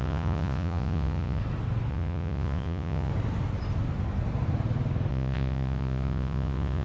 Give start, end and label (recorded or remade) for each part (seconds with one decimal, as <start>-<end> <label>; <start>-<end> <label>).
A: 0.0-1.4 remade; 1.4-1.9 recorded; 1.9-3.1 remade; 3.1-5.1 recorded; 5.1-6.8 remade